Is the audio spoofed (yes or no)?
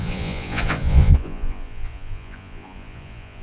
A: yes